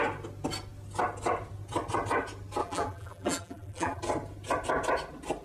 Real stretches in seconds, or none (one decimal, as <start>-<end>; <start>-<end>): 0.0-2.6; 4.0-5.4

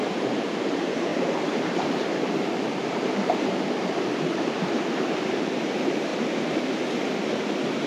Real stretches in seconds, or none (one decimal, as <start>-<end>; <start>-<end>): none